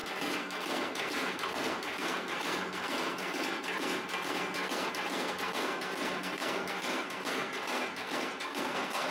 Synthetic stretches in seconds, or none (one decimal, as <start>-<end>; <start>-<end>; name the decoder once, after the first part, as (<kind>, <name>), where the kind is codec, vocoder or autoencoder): 0.0-9.1 (codec, SNAC)